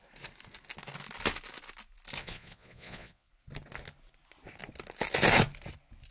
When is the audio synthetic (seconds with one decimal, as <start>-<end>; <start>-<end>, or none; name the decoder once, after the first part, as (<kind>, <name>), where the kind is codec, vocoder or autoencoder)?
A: 2.2-3.3 (vocoder, Vocos)